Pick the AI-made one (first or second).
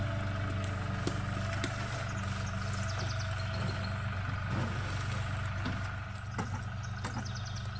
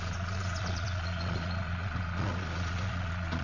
second